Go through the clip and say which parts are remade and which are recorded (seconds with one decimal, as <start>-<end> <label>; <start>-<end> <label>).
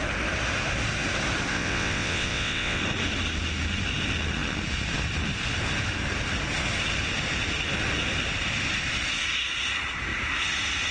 0.0-1.5 recorded; 1.5-2.8 remade; 2.8-10.9 recorded